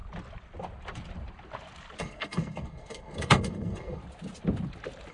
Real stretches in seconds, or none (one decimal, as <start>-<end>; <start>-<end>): 0.0-2.0; 4.0-5.1